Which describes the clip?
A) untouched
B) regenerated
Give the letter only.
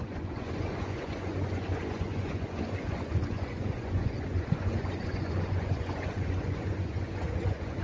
B